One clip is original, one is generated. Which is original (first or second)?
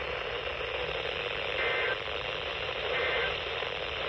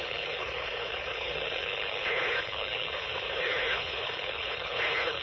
first